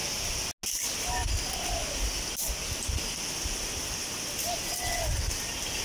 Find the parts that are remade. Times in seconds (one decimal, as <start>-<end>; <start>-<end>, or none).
none